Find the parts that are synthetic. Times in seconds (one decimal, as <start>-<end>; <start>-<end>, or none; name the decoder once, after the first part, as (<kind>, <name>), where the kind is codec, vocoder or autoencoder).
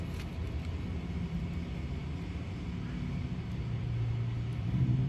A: 0.9-1.4 (vocoder, BigVGAN v2); 4.5-5.1